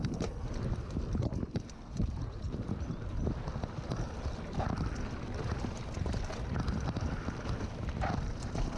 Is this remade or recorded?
recorded